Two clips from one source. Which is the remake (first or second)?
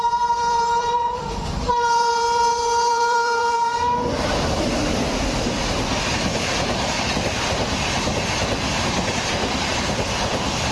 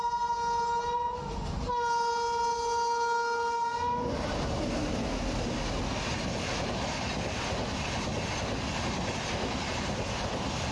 first